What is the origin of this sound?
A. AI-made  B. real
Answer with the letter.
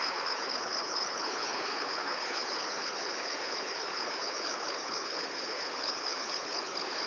A